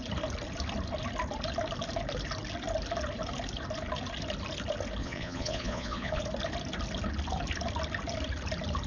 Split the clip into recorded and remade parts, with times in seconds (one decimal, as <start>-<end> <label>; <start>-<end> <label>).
0.0-5.0 recorded; 5.0-6.2 remade; 6.2-8.9 recorded